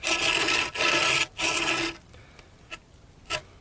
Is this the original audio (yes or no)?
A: yes